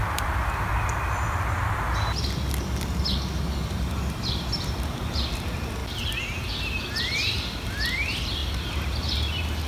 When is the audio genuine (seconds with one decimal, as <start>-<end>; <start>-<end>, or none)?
0.7-3.9; 5.8-7.7